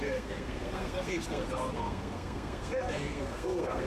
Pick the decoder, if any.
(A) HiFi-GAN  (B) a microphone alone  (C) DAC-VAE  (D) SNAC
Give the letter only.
D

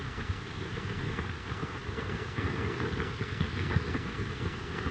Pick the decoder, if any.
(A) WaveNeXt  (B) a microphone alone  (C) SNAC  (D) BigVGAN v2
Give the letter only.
C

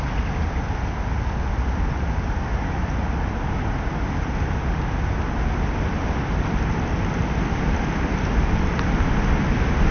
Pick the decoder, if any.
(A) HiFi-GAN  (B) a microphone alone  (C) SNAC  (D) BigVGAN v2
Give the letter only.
B